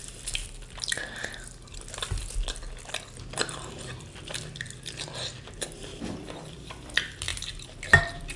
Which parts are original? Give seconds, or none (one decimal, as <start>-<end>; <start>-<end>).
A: 1.2-6.0; 7.3-8.0